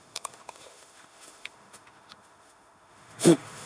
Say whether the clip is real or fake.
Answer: fake